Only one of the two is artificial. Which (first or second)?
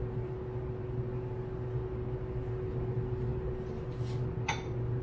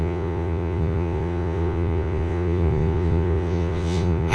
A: second